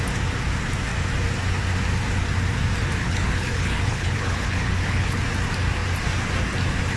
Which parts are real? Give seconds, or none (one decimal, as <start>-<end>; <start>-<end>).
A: 0.0-3.0; 5.2-7.0